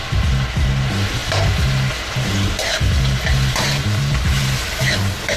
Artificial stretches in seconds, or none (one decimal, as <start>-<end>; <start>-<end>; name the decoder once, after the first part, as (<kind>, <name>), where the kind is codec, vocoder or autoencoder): none